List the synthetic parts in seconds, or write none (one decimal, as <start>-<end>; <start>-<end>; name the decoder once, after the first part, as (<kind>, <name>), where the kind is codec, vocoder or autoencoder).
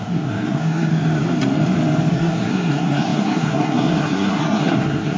0.0-0.9 (codec, SNAC); 2.1-5.2